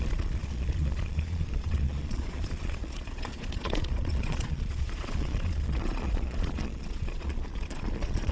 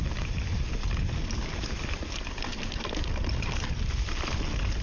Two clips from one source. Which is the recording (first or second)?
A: second